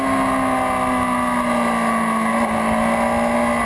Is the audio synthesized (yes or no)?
no